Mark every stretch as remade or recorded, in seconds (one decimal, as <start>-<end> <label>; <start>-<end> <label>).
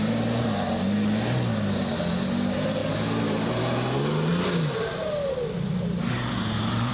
0.0-6.9 recorded